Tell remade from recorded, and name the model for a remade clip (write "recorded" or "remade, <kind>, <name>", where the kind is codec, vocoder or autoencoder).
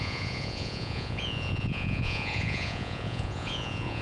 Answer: remade, vocoder, Vocos